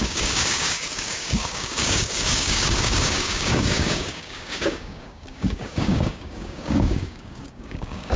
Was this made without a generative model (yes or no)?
no